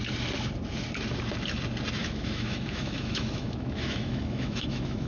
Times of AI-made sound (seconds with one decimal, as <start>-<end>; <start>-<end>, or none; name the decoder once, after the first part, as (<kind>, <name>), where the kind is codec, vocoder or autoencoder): 2.0-5.1 (autoencoder, DAC-VAE)